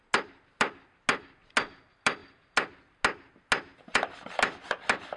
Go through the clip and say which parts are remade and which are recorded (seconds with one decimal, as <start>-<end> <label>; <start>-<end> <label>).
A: 0.0-5.2 recorded